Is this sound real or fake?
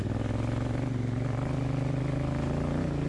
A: real